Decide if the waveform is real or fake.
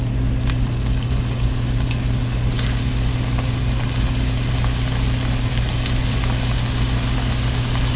real